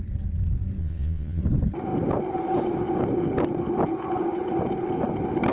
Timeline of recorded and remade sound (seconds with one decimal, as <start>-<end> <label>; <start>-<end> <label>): 0.0-0.8 recorded; 0.8-1.4 remade; 1.4-5.5 recorded